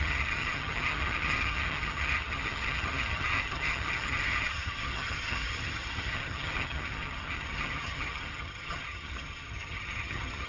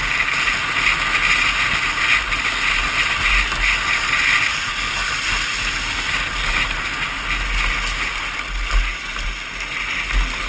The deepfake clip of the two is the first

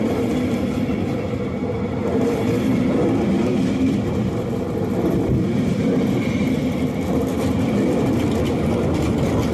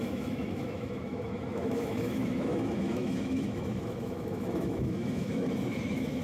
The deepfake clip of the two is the second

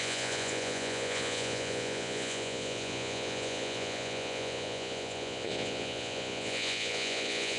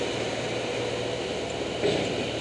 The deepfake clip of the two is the first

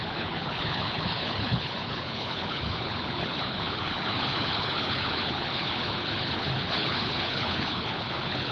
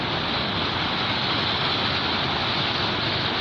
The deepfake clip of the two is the first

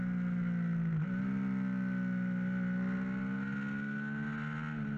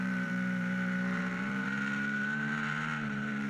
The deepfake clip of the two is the second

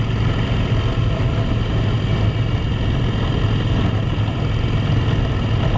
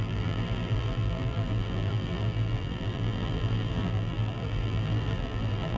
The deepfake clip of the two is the second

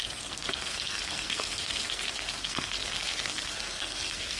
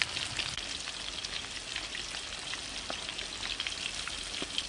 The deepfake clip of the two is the first